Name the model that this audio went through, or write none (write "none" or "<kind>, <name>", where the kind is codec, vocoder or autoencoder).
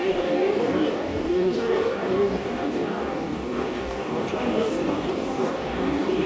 codec, DAC